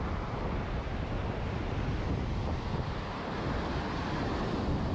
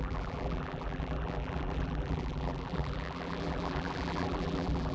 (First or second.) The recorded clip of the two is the first